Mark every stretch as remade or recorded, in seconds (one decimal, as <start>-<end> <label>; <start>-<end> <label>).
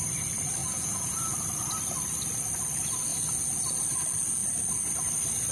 0.0-0.6 recorded; 0.6-1.3 remade; 1.3-5.5 recorded